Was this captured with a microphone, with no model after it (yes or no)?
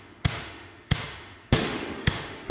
no